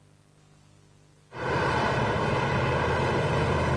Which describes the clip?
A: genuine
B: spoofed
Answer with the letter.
A